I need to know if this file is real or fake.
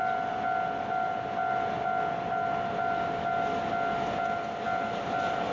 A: real